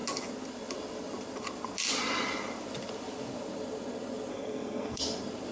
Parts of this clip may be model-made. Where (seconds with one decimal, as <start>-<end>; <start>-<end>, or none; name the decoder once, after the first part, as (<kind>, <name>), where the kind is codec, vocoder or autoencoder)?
4.3-5.0 (codec, SNAC)